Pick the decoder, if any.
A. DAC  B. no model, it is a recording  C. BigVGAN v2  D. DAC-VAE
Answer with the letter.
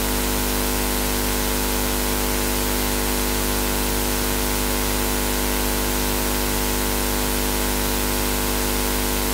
B